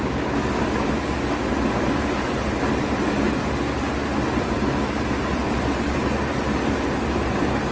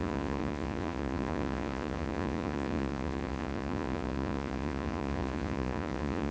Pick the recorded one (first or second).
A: first